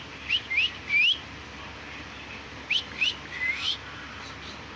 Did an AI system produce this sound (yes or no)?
no